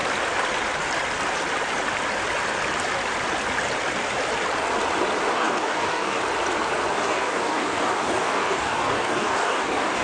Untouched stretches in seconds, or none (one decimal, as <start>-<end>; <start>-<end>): 0.0-5.3; 6.2-6.9